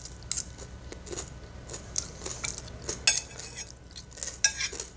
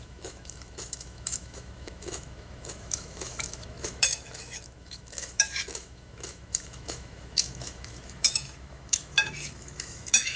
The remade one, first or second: second